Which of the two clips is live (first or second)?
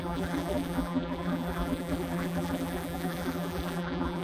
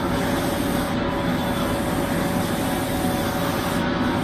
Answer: second